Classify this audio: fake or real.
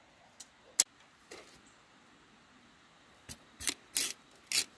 real